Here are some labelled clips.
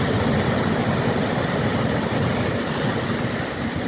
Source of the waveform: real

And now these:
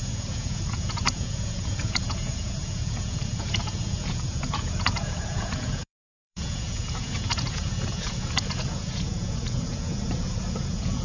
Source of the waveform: fake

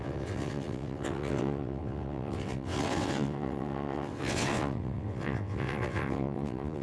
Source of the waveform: fake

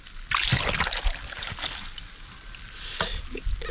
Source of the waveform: real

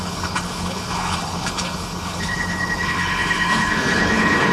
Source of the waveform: fake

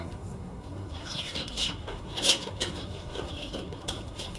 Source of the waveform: fake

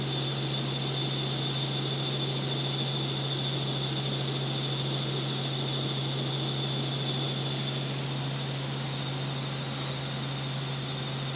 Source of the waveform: real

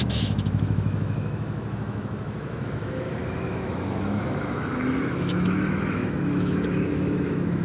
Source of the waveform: fake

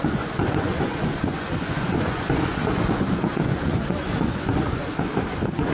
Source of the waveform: fake